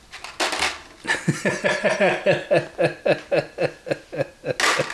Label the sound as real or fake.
real